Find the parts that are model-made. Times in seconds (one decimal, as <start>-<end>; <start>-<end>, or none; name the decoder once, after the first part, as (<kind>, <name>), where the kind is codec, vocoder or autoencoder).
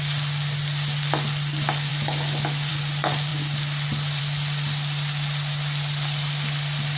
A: none